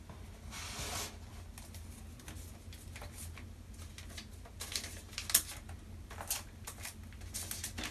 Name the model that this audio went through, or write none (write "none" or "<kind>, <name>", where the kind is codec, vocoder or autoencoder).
none